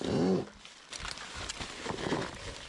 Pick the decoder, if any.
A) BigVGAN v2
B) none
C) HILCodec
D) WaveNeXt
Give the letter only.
B